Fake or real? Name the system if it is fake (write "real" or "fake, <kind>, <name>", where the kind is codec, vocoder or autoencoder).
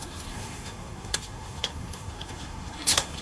fake, codec, SNAC